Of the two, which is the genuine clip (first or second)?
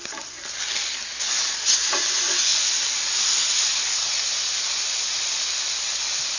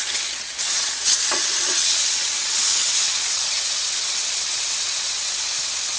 first